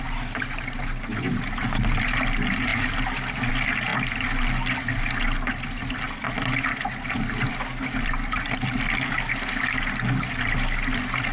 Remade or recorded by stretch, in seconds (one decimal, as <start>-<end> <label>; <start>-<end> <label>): 0.0-11.3 recorded